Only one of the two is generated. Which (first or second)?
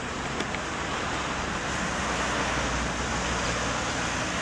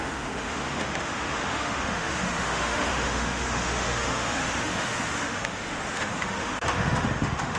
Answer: second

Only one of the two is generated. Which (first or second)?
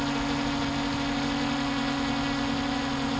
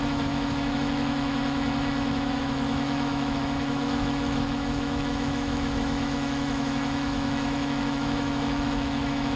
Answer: second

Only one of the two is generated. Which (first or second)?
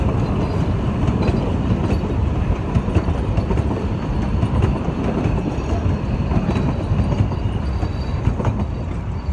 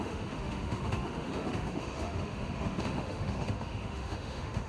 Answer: second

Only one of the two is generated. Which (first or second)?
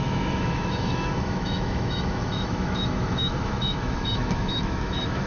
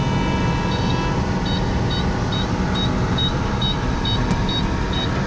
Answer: first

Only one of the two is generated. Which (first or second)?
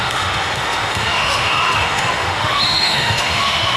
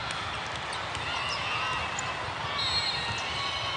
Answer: first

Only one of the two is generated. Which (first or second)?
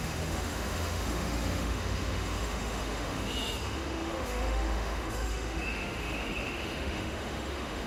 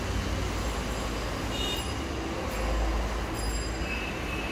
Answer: first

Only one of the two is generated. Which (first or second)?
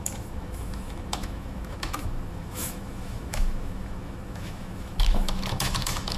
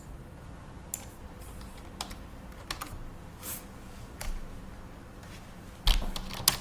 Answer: first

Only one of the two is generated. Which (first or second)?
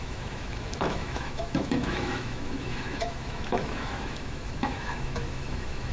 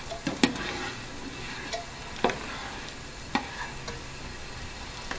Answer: first